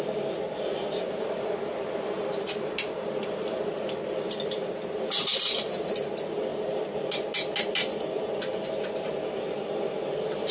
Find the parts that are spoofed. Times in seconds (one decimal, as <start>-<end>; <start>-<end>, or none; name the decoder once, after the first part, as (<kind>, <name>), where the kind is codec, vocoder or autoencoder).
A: none